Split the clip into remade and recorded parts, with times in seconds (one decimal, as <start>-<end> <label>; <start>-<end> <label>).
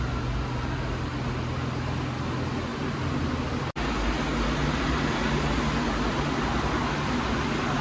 0.0-7.8 recorded